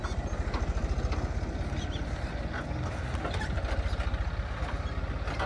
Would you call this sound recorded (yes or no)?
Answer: yes